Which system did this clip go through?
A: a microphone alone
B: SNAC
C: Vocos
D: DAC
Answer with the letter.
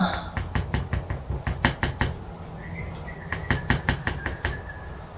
A